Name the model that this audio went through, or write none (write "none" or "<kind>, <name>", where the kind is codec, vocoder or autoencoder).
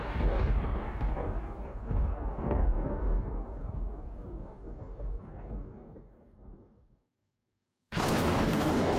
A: codec, DAC